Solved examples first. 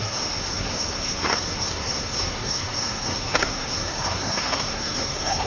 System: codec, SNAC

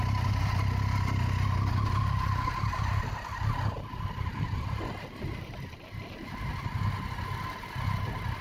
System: none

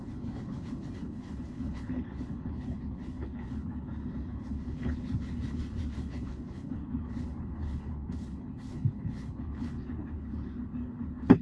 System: codec, HILCodec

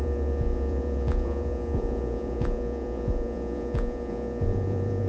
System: vocoder, Vocos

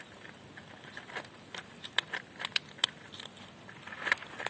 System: none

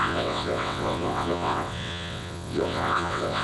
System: vocoder, WaveNeXt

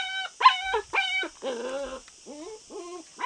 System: none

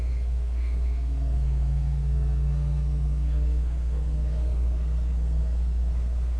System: codec, SNAC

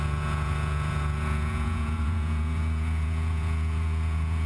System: vocoder, Vocos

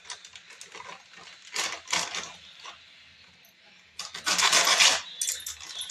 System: none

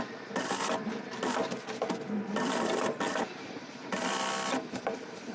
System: none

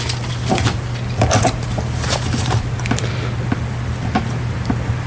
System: none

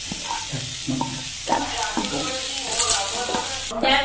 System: none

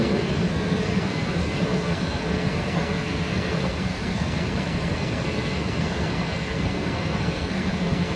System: codec, SNAC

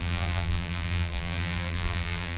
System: vocoder, BigVGAN v2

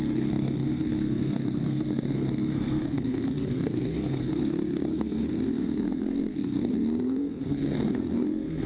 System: codec, SNAC